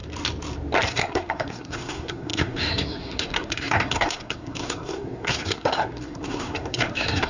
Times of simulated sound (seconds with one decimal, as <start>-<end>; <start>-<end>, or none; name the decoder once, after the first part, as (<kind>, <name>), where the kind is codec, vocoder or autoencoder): 0.9-7.3 (codec, SNAC)